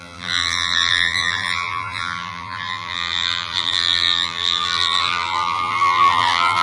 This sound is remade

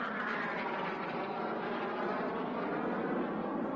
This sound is recorded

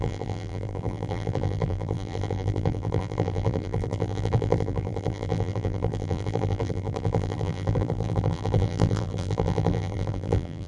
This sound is remade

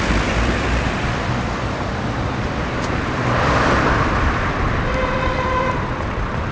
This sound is remade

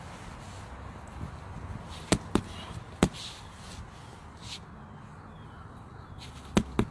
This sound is recorded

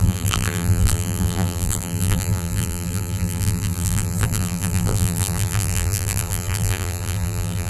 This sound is remade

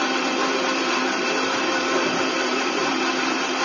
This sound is remade